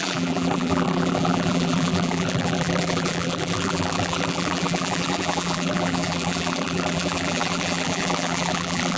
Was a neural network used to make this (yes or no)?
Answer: yes